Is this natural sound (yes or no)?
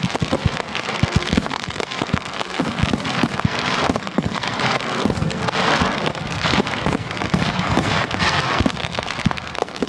no